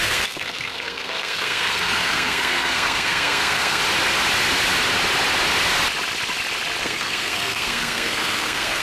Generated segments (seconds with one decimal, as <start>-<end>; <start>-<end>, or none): 0.0-3.8; 6.8-8.8